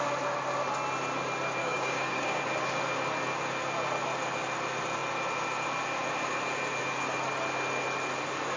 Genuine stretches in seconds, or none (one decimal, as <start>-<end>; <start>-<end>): 0.0-1.6; 2.4-8.6